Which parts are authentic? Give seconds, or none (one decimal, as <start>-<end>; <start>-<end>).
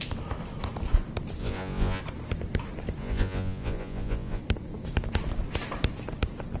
0.0-1.4; 2.0-3.0; 4.4-6.6